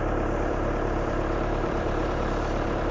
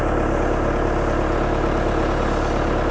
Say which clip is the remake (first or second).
first